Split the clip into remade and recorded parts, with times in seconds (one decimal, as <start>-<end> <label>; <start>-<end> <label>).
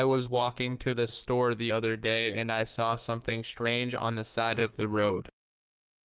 0.0-1.1 remade; 1.1-1.7 recorded; 1.7-6.0 remade